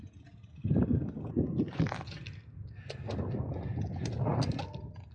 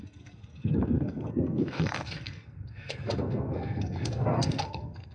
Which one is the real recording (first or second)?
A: first